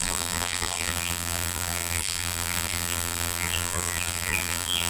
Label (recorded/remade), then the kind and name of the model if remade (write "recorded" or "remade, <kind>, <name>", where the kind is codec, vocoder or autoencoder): remade, vocoder, BigVGAN v2